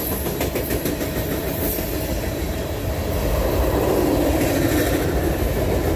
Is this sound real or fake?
real